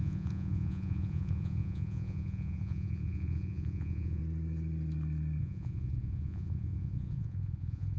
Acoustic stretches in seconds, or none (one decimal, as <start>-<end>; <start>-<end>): 4.2-5.4